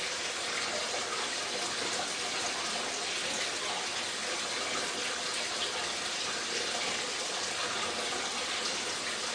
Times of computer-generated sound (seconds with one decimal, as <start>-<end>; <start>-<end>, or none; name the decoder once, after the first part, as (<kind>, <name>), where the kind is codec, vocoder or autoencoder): none